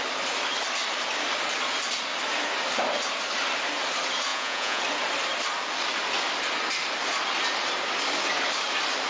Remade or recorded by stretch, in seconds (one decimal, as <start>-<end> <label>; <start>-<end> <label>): 0.0-4.3 recorded; 4.3-4.8 remade; 4.8-9.1 recorded